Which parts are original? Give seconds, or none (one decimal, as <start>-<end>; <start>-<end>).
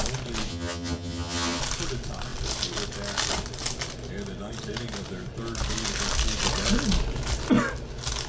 0.0-0.5; 1.6-8.3